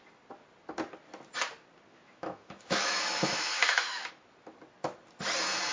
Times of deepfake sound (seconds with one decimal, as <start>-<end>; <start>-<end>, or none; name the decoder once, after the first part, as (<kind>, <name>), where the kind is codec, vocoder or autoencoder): 1.9-4.1 (autoencoder, DAC-VAE)